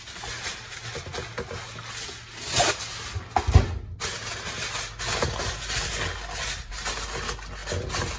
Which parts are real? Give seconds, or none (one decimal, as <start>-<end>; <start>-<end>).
0.0-8.2